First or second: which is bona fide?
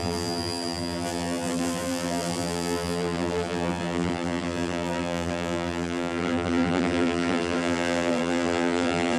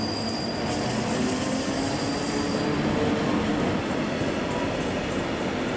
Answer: second